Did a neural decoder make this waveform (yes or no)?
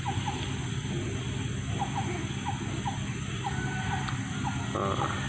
no